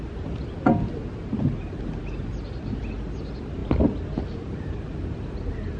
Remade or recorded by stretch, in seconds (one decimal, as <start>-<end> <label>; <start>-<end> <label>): 0.0-5.8 recorded